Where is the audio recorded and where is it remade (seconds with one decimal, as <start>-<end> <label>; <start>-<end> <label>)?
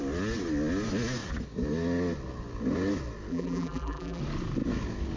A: 0.0-3.3 recorded; 3.3-4.2 remade; 4.2-5.2 recorded